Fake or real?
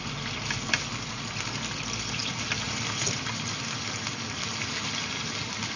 real